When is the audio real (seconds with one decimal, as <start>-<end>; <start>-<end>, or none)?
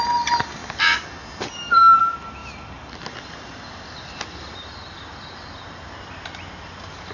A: 0.0-7.1